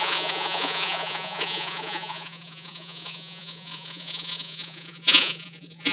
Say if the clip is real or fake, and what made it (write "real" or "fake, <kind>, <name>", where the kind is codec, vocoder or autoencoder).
fake, vocoder, Vocos